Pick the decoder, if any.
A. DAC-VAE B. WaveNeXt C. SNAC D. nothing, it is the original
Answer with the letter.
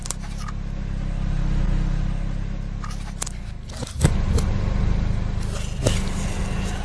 D